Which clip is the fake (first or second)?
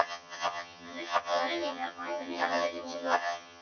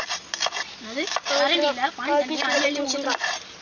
first